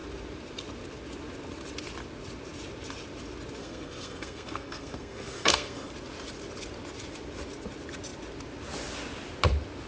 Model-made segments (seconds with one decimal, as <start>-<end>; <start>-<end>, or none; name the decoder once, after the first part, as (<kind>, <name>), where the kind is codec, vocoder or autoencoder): 3.6-5.9 (codec, SNAC)